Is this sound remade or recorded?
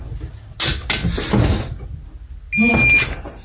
recorded